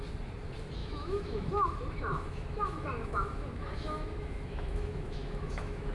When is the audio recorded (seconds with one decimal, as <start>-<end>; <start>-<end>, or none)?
0.0-0.8; 1.5-2.1